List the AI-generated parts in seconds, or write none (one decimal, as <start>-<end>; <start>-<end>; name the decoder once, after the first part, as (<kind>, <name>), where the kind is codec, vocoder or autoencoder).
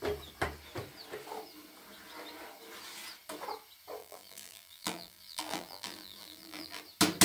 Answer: 4.0-6.8 (vocoder, BigVGAN v2)